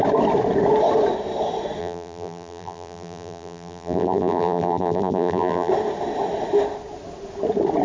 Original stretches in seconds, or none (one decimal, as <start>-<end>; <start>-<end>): 0.0-1.8; 5.7-7.8